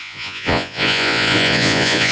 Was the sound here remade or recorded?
remade